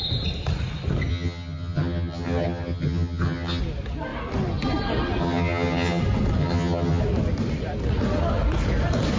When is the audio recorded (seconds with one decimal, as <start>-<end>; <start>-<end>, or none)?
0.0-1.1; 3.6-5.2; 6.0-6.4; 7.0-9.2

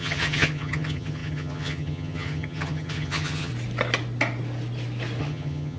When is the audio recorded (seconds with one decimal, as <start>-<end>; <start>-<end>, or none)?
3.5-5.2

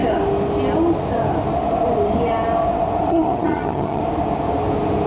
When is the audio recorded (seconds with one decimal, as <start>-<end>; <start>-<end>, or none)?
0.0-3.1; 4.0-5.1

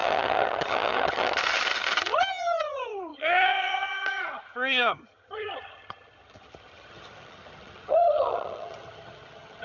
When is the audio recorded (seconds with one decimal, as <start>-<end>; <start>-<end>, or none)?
none

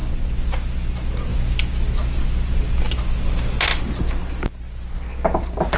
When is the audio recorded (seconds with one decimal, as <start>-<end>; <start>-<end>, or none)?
0.0-5.8

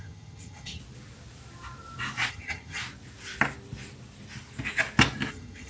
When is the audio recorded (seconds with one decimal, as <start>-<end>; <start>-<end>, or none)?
0.8-2.3; 2.8-5.3

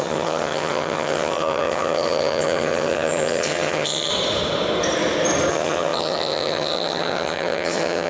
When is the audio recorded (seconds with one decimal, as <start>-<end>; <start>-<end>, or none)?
4.1-5.5